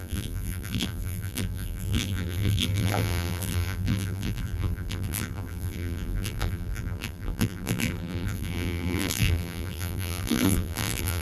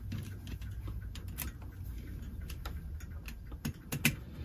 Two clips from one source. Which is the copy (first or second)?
first